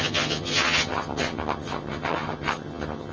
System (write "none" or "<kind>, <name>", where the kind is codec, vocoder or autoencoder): vocoder, HiFi-GAN